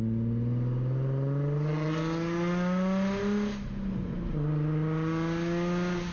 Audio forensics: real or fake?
real